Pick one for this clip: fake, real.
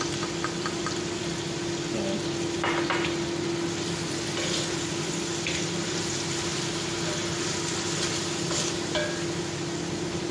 real